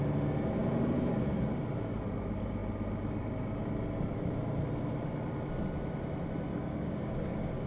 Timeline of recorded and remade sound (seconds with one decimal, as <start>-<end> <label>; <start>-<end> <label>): 0.0-6.5 recorded; 6.5-7.7 remade